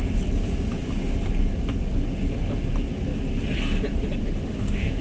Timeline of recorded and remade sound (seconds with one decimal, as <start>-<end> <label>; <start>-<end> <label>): 0.0-4.2 recorded; 4.2-5.0 remade